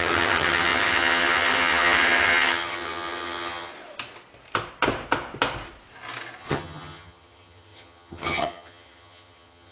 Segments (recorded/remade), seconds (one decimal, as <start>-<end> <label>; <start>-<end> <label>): 0.0-3.7 remade; 3.7-6.4 recorded; 6.4-9.7 remade